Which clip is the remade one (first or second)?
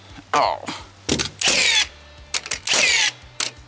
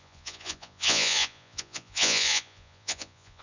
second